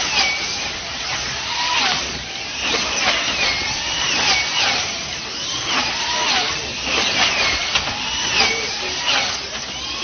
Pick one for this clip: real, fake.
real